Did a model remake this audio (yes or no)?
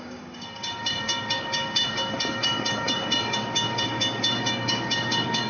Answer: yes